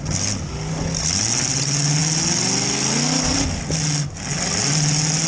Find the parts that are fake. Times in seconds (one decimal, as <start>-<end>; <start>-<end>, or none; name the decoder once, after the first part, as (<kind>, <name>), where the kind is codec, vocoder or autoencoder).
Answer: none